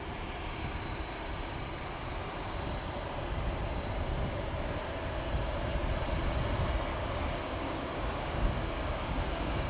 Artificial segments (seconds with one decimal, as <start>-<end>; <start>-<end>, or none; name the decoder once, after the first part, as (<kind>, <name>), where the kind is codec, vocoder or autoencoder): 6.9-9.7 (codec, DAC)